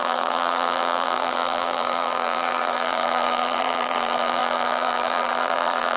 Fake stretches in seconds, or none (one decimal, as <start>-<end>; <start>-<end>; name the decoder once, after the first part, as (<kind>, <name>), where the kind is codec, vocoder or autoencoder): 0.0-6.0 (vocoder, BigVGAN v2)